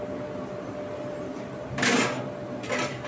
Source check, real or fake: real